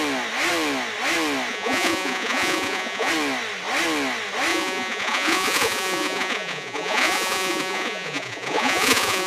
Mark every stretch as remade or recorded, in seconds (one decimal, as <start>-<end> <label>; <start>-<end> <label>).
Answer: 0.0-1.5 recorded; 1.5-3.1 remade; 3.1-4.5 recorded; 4.5-9.3 remade